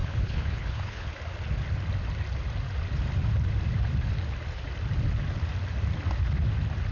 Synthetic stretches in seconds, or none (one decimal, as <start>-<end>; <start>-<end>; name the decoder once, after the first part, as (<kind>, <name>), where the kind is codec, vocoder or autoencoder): 0.0-1.1 (codec, HILCodec)